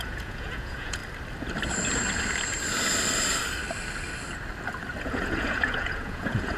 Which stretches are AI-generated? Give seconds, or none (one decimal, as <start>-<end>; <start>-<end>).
0.0-1.0; 5.0-6.6